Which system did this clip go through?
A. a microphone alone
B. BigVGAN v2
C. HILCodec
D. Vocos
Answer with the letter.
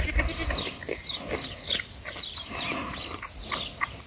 A